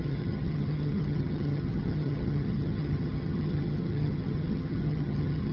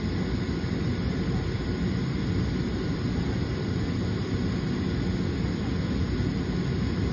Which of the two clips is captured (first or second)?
second